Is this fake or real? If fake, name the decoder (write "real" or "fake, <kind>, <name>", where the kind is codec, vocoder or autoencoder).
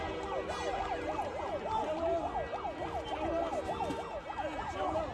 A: real